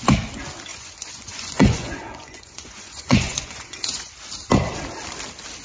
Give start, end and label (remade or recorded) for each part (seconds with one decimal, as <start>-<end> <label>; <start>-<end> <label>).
0.0-0.7 recorded; 0.7-4.1 remade; 4.1-5.6 recorded